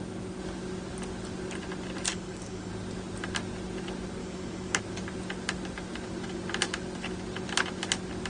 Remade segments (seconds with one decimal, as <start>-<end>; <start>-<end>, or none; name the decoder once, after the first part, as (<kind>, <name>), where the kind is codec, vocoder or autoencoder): 2.1-2.7 (codec, DAC); 4.2-4.8